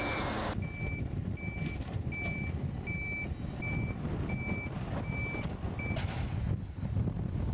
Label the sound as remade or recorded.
recorded